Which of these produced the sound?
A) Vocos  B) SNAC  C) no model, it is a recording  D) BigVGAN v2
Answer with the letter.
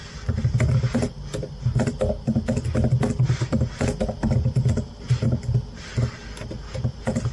C